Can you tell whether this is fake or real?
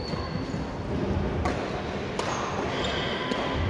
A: real